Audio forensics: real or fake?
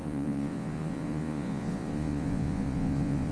fake